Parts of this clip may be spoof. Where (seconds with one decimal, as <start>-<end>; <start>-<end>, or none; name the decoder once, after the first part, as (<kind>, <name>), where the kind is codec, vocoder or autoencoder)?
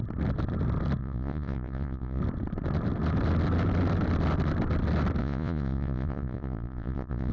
1.0-2.2 (vocoder, Vocos); 5.2-7.3